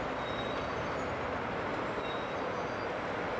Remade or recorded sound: recorded